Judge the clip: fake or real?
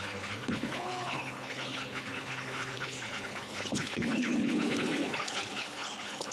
fake